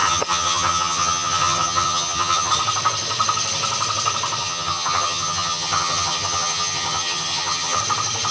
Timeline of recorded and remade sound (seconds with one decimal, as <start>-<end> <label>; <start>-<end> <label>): 0.0-2.5 remade; 2.5-4.4 recorded; 4.4-7.8 remade; 7.8-8.3 recorded